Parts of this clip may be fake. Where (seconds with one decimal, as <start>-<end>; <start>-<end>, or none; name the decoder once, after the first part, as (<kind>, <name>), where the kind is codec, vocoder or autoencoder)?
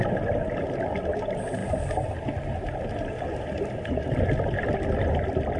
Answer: none